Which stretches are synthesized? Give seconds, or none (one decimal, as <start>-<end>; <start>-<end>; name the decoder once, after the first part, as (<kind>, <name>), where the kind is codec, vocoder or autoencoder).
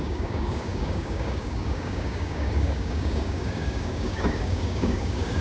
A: 0.0-5.4 (codec, DAC)